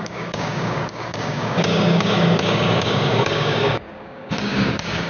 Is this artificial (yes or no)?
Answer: yes